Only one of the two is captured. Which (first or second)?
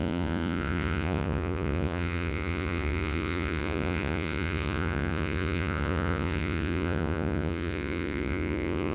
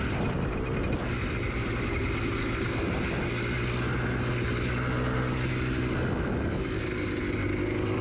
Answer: second